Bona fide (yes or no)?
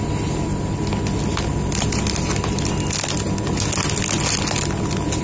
yes